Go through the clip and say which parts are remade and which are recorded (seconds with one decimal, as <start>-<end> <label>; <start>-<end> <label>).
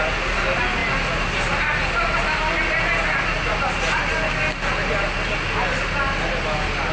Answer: 0.0-6.9 recorded